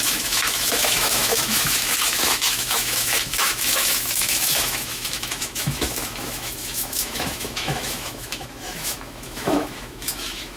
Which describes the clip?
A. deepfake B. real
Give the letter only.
A